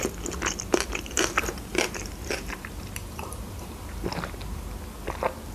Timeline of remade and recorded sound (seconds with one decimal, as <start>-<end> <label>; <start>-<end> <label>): 0.0-1.7 recorded; 1.7-4.7 remade; 4.7-5.5 recorded